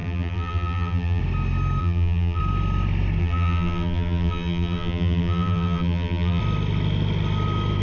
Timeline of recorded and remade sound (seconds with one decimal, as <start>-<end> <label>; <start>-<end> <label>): 0.0-1.2 remade; 1.2-1.8 recorded; 1.8-2.4 remade; 2.4-3.2 recorded; 3.2-6.4 remade; 6.4-7.8 recorded